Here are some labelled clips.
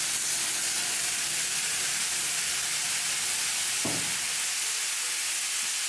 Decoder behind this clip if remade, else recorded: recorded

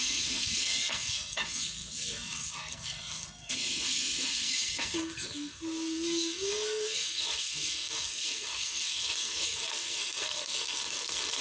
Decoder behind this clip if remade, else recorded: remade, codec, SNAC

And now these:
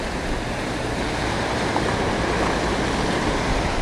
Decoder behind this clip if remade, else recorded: remade, vocoder, BigVGAN v2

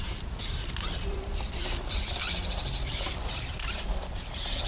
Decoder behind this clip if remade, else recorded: remade, vocoder, BigVGAN v2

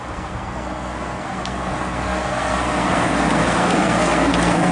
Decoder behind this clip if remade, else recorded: remade, codec, SNAC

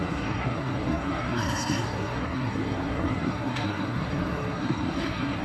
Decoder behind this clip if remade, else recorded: remade, codec, SNAC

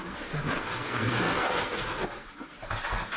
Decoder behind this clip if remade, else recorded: remade, codec, SNAC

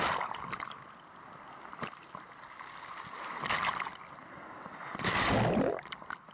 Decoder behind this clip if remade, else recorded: recorded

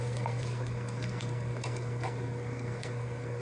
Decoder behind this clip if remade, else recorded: remade, codec, SNAC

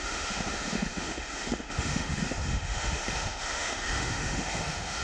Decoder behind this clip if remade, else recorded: remade, autoencoder, DAC-VAE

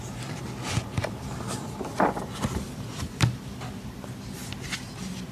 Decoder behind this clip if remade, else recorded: recorded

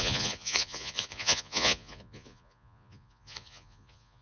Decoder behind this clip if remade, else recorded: remade, vocoder, Vocos